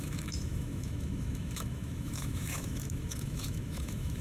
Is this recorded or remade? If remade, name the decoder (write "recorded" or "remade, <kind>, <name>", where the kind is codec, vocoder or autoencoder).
remade, autoencoder, DAC-VAE